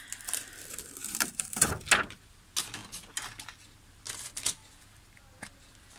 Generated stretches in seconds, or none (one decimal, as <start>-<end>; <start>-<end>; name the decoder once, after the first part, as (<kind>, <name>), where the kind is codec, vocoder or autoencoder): 1.0-1.8 (vocoder, BigVGAN v2)